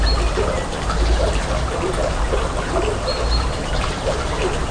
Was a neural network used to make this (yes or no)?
yes